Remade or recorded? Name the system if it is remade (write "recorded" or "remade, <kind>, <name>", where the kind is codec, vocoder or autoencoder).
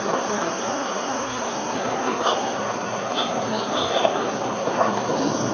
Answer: remade, codec, SNAC